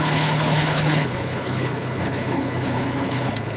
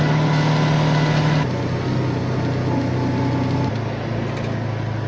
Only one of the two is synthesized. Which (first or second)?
first